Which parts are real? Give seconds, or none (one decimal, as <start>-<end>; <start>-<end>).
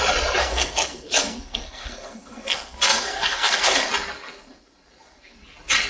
0.0-0.4; 3.9-5.9